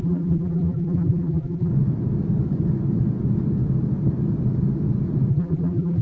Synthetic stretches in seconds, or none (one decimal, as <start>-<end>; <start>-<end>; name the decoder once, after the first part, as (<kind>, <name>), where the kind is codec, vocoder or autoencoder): 0.0-1.7 (vocoder, BigVGAN v2); 5.3-6.0